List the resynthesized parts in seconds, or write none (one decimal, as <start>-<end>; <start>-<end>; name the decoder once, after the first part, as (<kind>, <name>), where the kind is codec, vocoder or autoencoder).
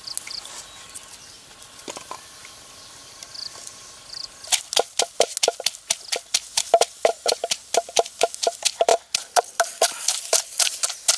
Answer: none